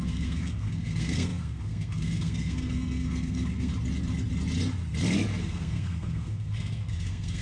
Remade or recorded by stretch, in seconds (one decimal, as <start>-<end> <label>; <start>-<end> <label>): 0.0-3.7 remade; 3.7-5.4 recorded; 5.4-7.4 remade